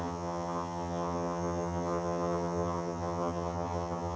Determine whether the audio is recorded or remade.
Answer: remade